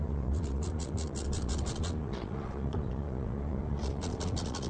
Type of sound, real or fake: fake